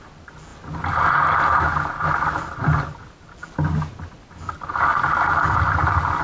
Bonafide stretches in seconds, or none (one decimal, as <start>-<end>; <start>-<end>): 0.0-6.2